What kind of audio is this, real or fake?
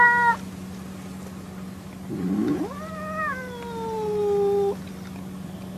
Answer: real